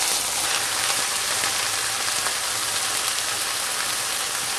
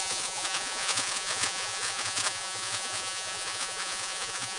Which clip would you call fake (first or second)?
second